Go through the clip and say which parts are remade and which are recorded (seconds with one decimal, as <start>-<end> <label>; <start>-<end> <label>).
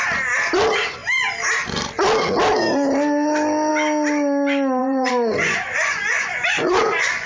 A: 0.0-4.8 recorded; 4.8-7.3 remade